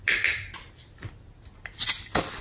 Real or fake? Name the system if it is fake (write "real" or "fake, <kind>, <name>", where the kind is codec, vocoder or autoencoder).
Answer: real